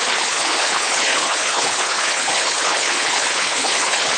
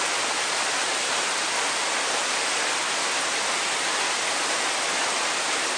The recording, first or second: second